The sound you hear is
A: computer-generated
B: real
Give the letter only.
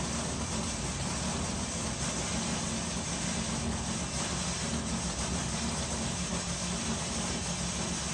B